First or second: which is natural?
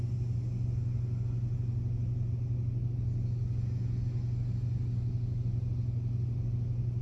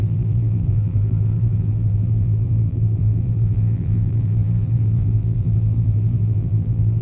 first